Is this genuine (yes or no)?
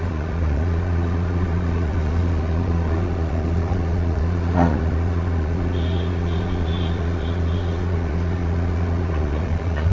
no